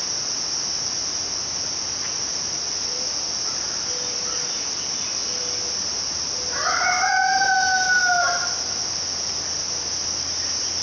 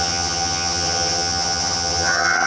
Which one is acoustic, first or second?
first